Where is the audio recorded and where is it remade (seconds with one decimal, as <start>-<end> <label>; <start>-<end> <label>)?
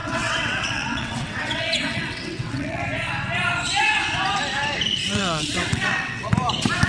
0.0-2.8 remade; 2.8-5.0 recorded; 5.0-6.3 remade; 6.3-6.9 recorded